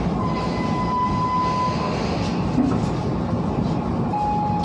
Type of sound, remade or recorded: recorded